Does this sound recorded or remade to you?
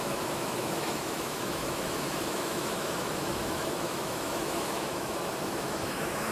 remade